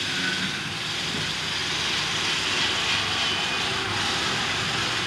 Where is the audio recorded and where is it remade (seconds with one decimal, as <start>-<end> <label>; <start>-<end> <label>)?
0.0-5.1 recorded